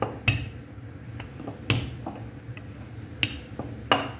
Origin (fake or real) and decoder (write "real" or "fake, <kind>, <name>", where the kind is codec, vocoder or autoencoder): real